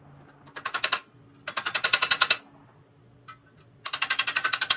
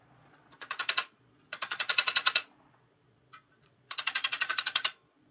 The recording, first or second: first